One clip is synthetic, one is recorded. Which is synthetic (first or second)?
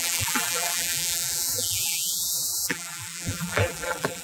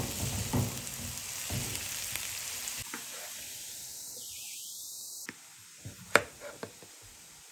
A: first